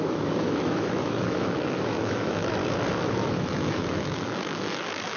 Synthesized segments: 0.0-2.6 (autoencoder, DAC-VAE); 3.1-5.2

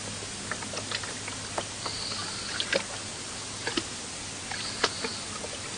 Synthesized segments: none

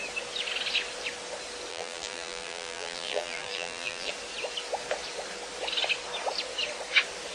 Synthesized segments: 1.7-4.1 (vocoder, BigVGAN v2)

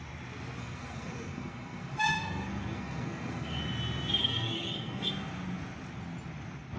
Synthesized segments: 0.6-3.6 (codec, SNAC); 4.2-5.1

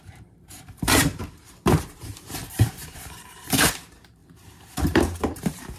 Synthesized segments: 0.0-5.8 (vocoder, BigVGAN v2)